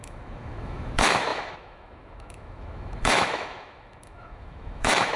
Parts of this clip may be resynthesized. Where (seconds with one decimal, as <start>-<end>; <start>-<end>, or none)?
0.0-5.2

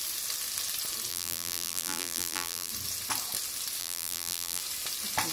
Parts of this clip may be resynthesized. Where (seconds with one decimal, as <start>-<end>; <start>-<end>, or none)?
1.1-2.7; 3.8-4.6